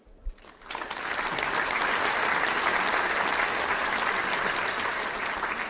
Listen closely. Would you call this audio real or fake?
real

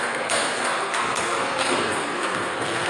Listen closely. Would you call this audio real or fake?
fake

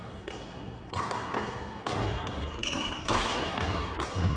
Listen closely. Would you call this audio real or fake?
fake